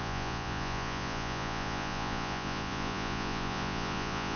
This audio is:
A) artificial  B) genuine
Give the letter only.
A